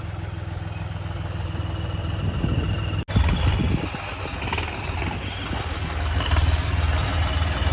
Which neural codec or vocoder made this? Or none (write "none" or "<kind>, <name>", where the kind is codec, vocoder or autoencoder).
none